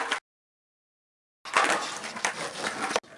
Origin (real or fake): real